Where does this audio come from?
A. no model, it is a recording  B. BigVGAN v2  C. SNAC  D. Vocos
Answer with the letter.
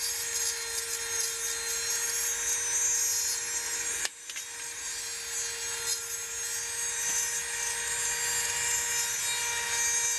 A